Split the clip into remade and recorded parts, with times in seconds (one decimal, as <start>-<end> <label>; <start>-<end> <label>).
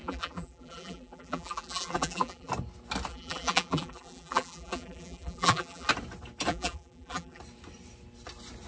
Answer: 0.0-2.5 remade; 2.5-3.1 recorded; 3.1-5.9 remade; 5.9-6.5 recorded; 6.5-7.4 remade; 7.4-8.7 recorded